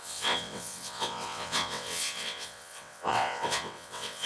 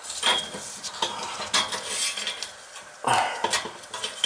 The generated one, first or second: first